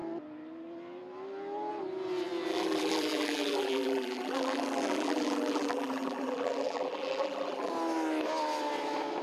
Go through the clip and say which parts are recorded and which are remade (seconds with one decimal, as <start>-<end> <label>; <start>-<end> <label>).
0.0-2.5 recorded; 2.5-7.7 remade; 7.7-9.2 recorded